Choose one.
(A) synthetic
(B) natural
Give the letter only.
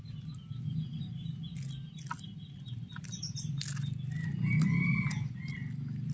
B